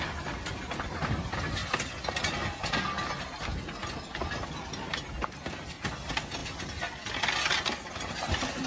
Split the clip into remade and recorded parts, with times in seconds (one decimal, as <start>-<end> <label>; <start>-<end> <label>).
0.0-8.7 recorded